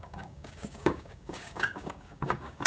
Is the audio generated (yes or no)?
yes